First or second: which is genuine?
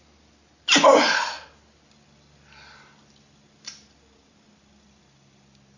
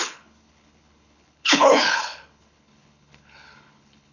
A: first